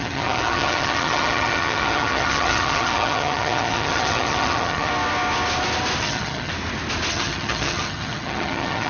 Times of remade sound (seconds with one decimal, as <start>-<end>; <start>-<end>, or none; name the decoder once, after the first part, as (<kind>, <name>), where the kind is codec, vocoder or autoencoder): 0.0-4.9 (vocoder, HiFi-GAN); 6.0-6.5; 7.1-8.9